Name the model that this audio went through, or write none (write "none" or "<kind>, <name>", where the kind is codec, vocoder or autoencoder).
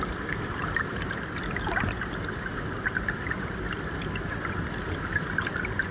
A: vocoder, BigVGAN v2